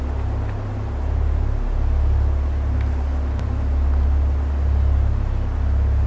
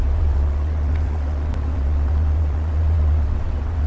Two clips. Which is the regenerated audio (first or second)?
second